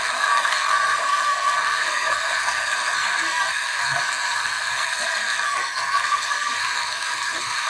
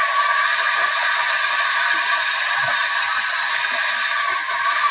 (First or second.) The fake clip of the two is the first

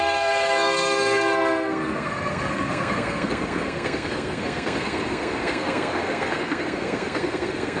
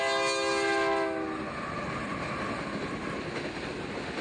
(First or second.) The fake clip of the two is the first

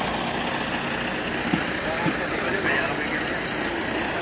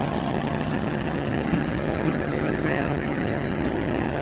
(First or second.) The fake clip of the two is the second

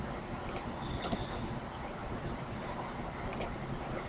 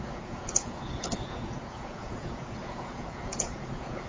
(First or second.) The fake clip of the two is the second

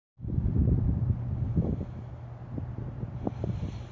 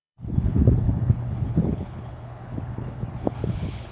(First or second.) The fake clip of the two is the second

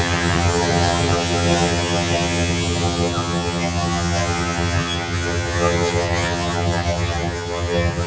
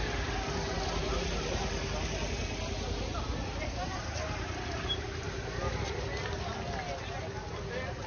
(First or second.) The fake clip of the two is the first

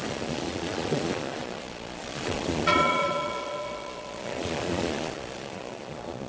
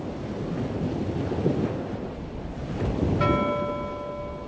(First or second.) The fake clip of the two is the first